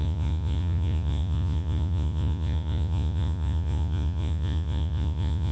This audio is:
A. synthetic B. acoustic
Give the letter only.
A